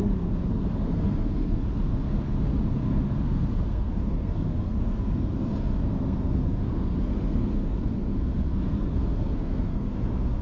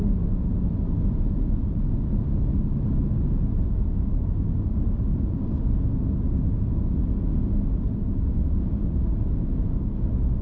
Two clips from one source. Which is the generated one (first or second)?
first